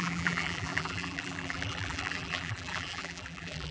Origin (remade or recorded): remade